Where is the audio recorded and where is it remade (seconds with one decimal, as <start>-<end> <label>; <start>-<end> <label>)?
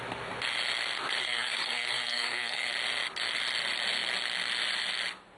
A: 0.0-1.2 recorded; 1.2-2.7 remade; 2.7-5.4 recorded